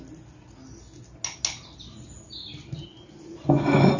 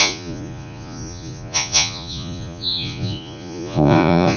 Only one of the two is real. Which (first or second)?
first